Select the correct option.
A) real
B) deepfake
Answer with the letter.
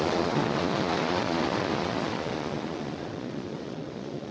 B